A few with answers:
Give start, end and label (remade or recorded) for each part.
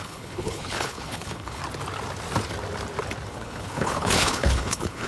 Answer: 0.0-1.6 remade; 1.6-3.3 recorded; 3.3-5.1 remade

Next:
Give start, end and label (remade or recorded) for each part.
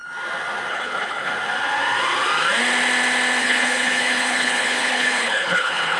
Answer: 0.0-0.7 recorded; 0.7-1.3 remade; 1.3-3.4 recorded; 3.4-6.0 remade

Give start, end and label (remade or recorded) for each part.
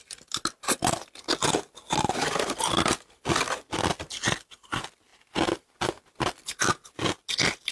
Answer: 0.0-7.7 recorded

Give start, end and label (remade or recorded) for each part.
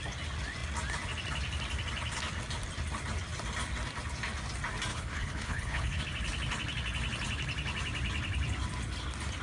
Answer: 0.0-4.9 recorded; 4.9-6.0 remade; 6.0-9.4 recorded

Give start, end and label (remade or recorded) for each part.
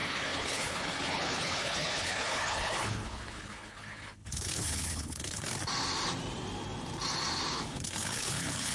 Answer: 0.0-5.5 remade; 5.5-7.5 recorded; 7.5-8.7 remade